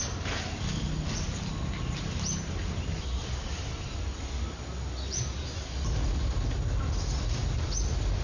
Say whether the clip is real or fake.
real